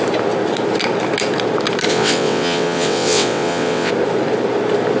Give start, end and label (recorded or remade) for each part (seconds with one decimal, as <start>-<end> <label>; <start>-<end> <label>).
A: 0.0-1.9 recorded; 1.9-3.9 remade; 3.9-5.0 recorded